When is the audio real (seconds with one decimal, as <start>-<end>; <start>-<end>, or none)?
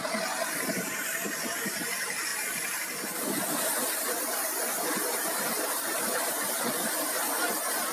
0.0-0.4; 1.5-2.3; 6.6-7.9